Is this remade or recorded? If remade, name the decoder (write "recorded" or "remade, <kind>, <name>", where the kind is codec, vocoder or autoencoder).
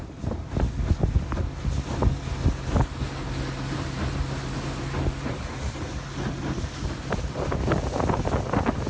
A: recorded